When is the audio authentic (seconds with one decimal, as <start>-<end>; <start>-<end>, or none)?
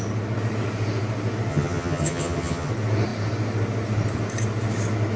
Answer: 0.0-1.5; 2.7-5.2